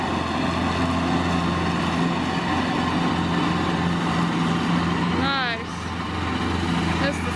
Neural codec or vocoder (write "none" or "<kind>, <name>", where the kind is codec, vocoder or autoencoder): none